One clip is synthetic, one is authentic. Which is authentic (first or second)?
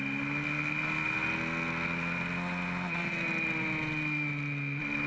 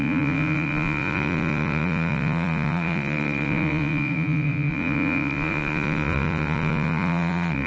first